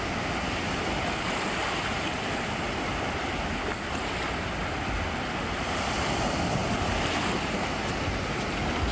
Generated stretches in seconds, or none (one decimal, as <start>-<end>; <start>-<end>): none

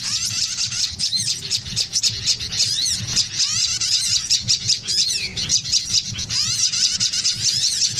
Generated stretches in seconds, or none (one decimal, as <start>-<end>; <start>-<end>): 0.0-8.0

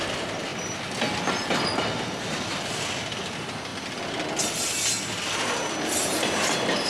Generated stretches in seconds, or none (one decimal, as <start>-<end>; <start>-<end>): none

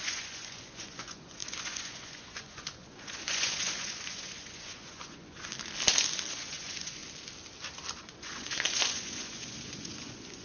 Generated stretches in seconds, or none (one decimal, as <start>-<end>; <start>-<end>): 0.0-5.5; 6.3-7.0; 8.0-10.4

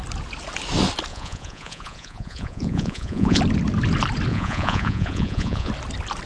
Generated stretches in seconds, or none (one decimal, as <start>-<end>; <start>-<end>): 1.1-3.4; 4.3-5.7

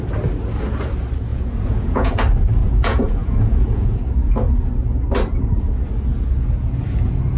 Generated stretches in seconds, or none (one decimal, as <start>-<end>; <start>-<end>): 1.3-2.1; 2.6-4.0

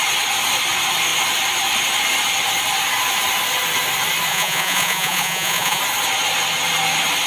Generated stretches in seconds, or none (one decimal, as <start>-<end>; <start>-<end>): 4.3-5.8

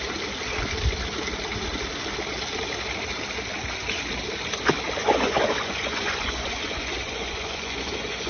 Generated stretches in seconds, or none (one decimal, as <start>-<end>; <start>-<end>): 5.0-8.3